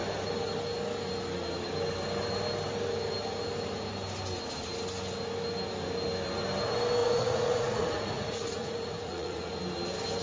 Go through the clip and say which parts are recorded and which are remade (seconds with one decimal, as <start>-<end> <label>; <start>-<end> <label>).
0.0-7.0 recorded; 7.0-9.6 remade; 9.6-10.2 recorded